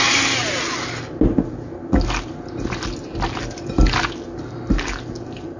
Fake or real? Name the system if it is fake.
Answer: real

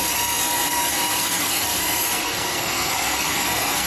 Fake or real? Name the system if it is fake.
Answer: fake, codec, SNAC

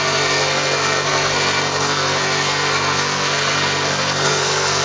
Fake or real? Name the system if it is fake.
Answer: fake, codec, SNAC